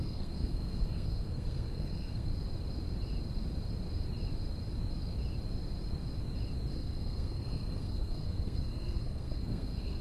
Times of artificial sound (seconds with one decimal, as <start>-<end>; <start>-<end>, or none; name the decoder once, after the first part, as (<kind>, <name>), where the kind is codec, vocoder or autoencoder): 0.0-2.3 (codec, SNAC); 6.7-10.0